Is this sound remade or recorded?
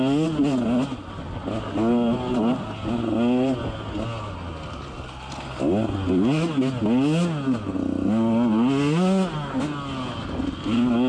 recorded